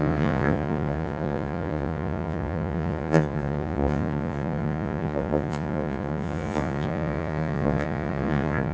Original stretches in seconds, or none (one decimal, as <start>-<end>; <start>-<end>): none